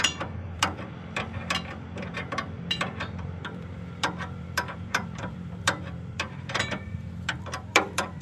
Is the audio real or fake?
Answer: fake